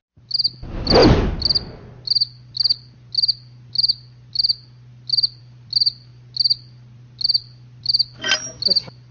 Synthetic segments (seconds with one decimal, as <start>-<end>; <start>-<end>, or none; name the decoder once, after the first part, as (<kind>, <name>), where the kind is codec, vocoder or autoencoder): none